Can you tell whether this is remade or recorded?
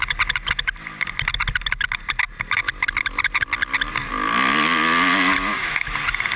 recorded